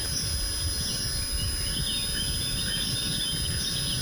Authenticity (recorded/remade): recorded